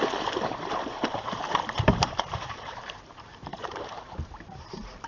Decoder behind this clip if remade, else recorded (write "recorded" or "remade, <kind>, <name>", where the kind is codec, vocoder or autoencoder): remade, vocoder, BigVGAN v2